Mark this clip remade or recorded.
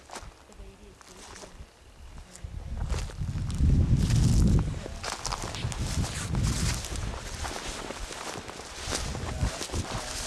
recorded